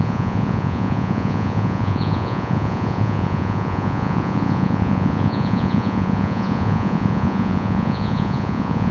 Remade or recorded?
remade